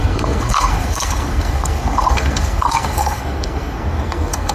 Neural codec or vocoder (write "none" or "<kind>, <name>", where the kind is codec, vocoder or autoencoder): codec, SNAC